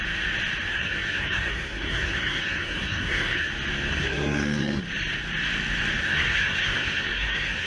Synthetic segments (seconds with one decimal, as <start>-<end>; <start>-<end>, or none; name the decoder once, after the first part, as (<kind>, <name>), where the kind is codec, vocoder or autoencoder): 0.7-3.5 (codec, SNAC); 3.9-4.8; 6.0-7.7